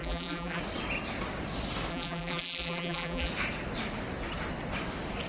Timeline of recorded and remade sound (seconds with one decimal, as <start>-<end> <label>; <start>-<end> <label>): 0.0-0.6 remade; 0.6-1.9 recorded; 1.9-3.3 remade; 3.3-5.3 recorded